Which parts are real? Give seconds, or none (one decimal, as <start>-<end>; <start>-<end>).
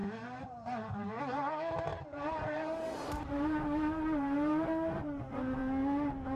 5.6-6.4